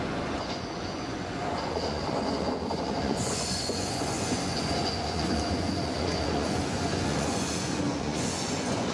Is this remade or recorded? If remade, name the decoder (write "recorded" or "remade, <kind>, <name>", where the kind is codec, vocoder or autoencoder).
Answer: remade, vocoder, Vocos